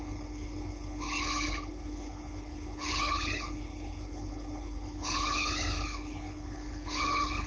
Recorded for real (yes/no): no